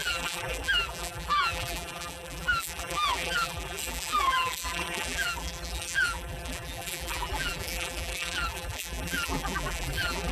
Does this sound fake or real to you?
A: fake